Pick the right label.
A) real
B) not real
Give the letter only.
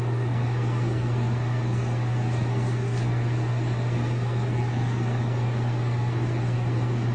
B